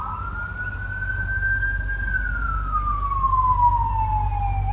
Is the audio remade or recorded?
recorded